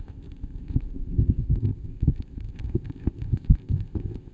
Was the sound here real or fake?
fake